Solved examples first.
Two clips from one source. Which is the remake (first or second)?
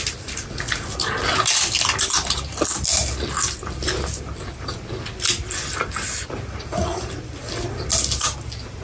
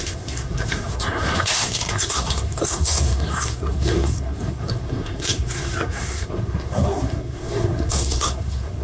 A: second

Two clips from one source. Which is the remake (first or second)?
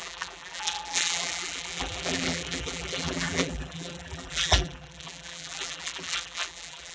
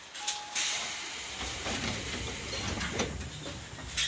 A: first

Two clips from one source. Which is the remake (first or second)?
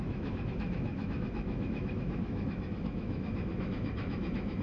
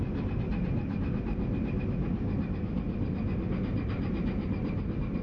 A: first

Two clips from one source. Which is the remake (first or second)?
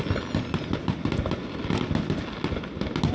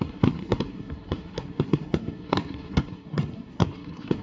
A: second